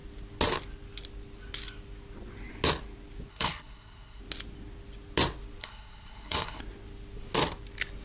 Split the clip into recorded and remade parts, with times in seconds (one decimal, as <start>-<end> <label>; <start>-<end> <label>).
0.0-3.3 recorded; 3.3-4.2 remade; 4.2-5.6 recorded; 5.6-6.6 remade; 6.6-8.0 recorded